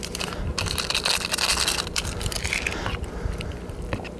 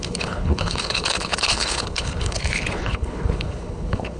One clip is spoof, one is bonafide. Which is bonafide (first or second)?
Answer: first